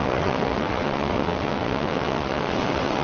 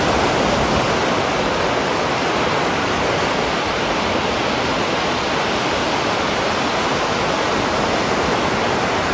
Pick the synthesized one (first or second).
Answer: first